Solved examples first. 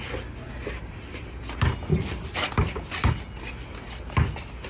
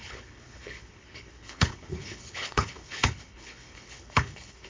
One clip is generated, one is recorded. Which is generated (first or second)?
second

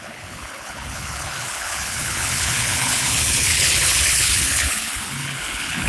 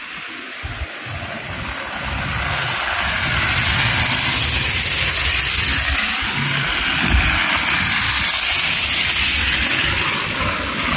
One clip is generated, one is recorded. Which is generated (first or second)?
first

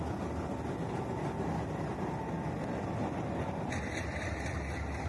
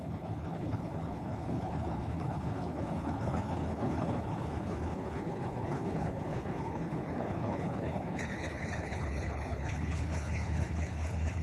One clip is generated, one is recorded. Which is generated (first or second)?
second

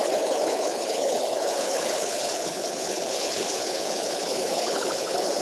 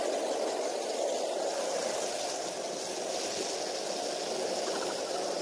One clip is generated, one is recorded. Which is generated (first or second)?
first